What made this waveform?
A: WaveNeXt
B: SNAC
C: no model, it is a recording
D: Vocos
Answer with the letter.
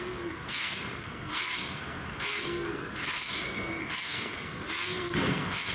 B